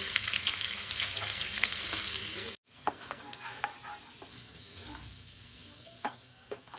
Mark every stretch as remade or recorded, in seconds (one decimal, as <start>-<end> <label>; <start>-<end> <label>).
0.0-3.7 remade; 3.7-4.3 recorded; 4.3-6.8 remade